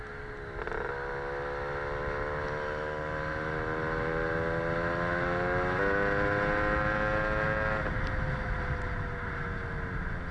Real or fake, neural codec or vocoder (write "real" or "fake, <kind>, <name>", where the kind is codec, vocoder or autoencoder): real